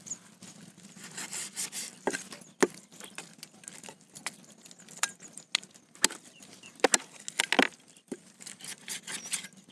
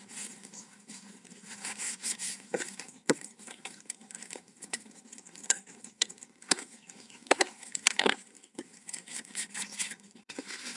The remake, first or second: second